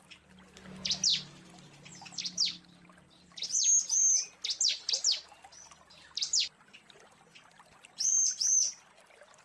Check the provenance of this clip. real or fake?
real